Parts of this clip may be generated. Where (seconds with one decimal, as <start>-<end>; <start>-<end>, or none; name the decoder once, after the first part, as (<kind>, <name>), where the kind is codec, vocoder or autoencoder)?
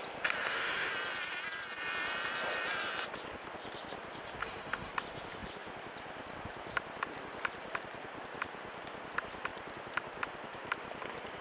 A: 0.4-0.9 (autoencoder, DAC-VAE); 4.4-4.9